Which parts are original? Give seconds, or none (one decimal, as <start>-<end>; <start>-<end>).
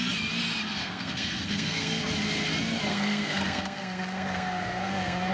0.0-0.8; 2.0-2.9